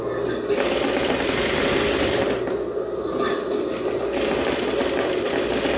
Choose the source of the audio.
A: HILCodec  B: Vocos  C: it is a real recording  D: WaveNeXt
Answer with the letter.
C